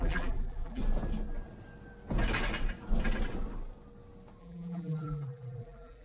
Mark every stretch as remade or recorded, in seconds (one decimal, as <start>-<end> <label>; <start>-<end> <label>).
0.0-0.8 remade; 0.8-4.4 recorded; 4.4-6.0 remade